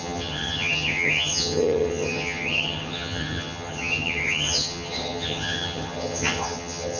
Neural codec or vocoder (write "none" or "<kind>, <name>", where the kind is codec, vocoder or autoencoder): vocoder, HiFi-GAN